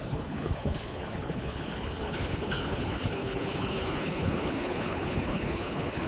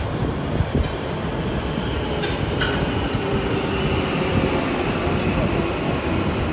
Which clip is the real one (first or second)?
second